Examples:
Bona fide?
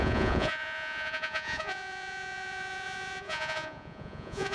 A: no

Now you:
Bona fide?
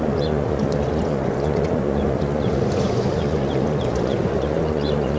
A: no